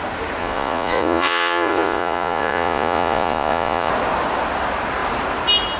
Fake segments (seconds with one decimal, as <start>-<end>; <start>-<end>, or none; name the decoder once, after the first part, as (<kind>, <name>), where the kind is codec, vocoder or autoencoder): 0.4-3.9 (vocoder, Vocos)